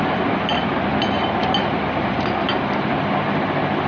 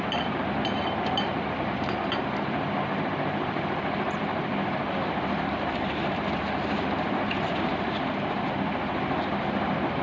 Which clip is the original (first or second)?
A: first